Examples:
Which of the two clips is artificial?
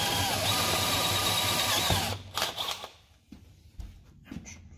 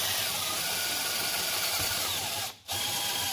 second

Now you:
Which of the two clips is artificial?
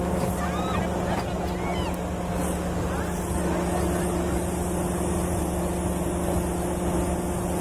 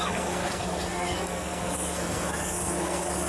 second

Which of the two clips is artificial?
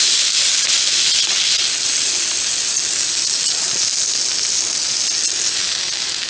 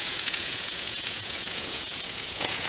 second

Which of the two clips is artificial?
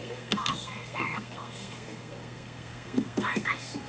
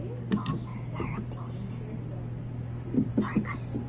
first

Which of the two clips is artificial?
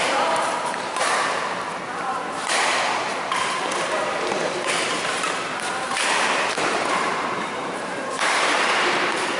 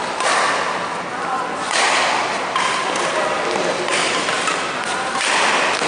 first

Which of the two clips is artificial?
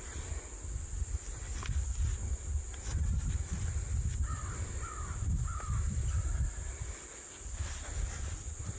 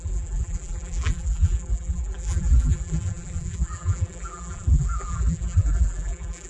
second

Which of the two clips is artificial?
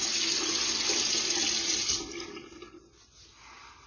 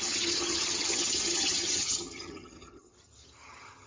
second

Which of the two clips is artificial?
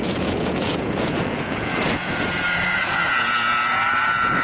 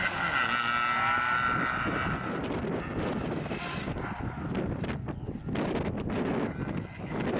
first